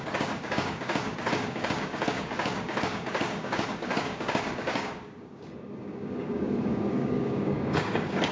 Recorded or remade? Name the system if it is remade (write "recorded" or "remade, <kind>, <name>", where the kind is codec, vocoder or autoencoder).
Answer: remade, codec, DAC